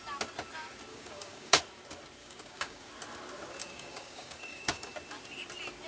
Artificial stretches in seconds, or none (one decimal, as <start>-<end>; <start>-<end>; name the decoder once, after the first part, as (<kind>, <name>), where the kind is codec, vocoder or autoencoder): 0.9-1.6 (codec, DAC); 2.2-2.9; 3.6-4.9